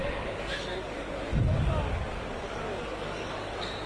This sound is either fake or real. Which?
fake